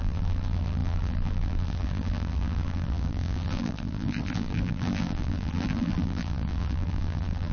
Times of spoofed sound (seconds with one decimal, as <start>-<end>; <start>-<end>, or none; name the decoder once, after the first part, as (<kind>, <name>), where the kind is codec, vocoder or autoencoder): 0.0-7.5 (vocoder, BigVGAN v2)